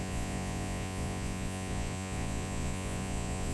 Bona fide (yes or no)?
no